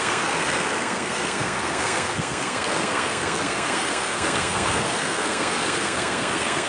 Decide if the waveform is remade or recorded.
remade